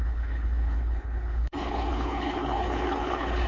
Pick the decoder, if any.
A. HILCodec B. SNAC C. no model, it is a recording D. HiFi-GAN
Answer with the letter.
A